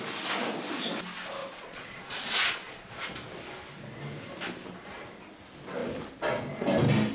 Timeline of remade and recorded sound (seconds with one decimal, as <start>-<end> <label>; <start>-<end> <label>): 0.0-1.4 recorded; 1.4-3.0 remade; 3.0-7.1 recorded